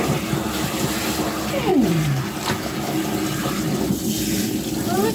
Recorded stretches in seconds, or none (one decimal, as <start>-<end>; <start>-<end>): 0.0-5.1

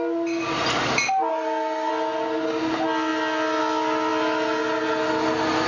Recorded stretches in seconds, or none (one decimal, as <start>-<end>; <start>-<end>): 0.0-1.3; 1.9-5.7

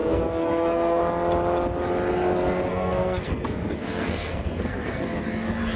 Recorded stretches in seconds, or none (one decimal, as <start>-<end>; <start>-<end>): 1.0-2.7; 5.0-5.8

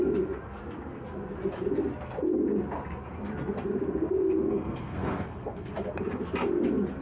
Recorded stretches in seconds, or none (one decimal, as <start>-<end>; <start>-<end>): 0.0-4.2; 5.7-7.0

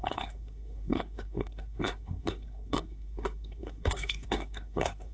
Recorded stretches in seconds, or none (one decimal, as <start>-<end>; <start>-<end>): none

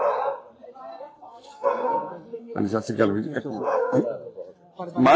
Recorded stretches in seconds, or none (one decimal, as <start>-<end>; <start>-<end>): 0.0-0.9; 4.0-5.2

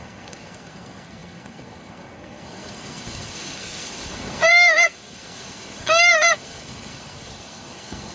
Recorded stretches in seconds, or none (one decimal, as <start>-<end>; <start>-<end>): none